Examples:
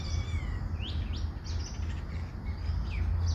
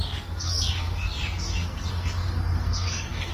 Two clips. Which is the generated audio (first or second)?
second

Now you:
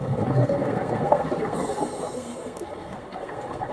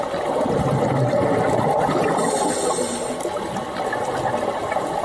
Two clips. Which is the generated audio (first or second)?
first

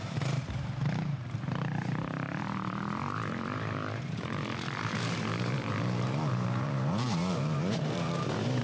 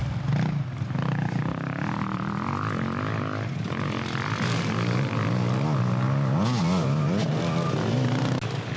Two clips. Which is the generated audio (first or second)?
first